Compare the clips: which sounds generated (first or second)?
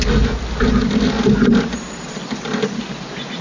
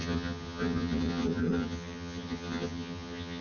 second